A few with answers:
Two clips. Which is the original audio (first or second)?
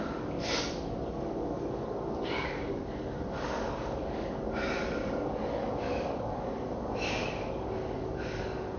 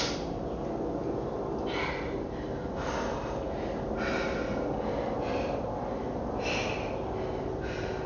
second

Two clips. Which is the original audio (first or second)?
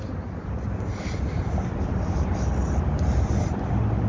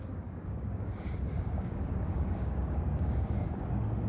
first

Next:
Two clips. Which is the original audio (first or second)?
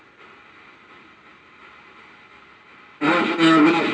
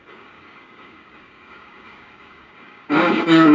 first